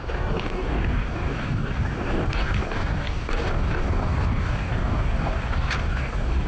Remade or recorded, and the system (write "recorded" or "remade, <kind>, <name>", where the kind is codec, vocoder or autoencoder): remade, codec, DAC